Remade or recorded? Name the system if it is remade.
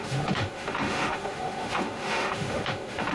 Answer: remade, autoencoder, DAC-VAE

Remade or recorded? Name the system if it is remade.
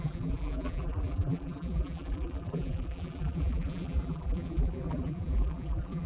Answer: remade, vocoder, BigVGAN v2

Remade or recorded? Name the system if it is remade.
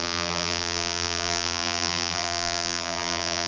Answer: remade, vocoder, BigVGAN v2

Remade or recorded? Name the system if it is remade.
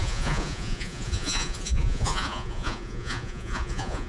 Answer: remade, vocoder, Vocos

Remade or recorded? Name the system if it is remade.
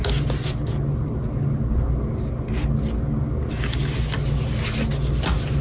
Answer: recorded